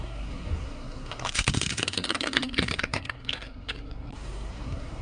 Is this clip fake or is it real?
fake